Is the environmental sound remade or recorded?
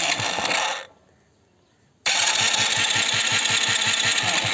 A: recorded